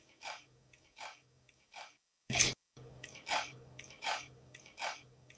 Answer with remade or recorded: remade